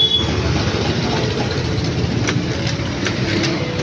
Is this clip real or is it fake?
real